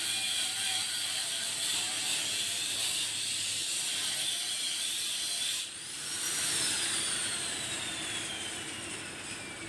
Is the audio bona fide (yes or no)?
no